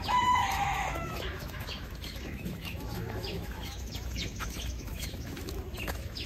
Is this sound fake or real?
fake